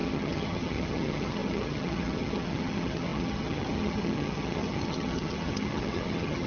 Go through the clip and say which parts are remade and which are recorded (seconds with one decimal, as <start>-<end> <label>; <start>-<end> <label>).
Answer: 0.0-6.5 remade